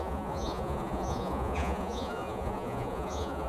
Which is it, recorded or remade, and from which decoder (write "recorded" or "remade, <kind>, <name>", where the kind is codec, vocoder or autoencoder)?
remade, vocoder, Vocos